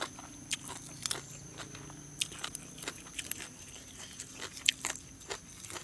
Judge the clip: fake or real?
real